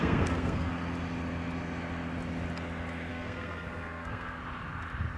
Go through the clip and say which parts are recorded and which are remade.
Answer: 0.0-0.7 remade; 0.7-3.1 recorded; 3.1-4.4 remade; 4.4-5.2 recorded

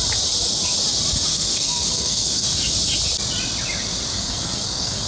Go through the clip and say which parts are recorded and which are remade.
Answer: 0.0-1.3 recorded; 1.3-2.6 remade; 2.6-4.1 recorded; 4.1-5.1 remade

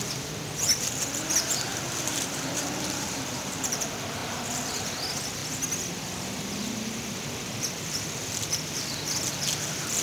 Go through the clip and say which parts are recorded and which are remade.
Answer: 0.0-1.7 recorded; 1.7-3.6 remade; 3.6-10.0 recorded

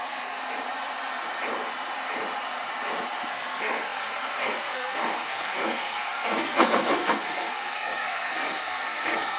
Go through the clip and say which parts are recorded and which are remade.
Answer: 0.0-0.4 remade; 0.4-3.3 recorded; 3.3-9.4 remade

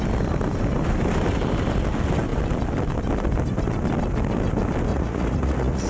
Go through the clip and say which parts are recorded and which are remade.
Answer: 0.0-4.9 recorded; 4.9-5.9 remade

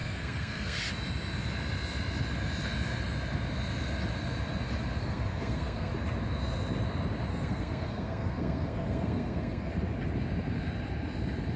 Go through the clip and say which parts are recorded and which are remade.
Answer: 0.0-0.8 remade; 0.8-5.0 recorded; 5.0-5.9 remade; 5.9-7.3 recorded; 7.3-9.7 remade; 9.7-11.6 recorded

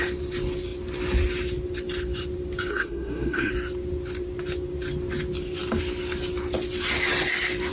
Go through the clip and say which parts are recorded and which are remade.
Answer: 0.0-2.7 recorded; 2.7-3.5 remade; 3.5-7.7 recorded

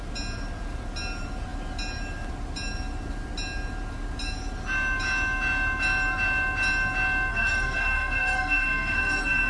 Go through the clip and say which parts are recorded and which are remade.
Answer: 0.0-7.3 recorded; 7.3-9.5 remade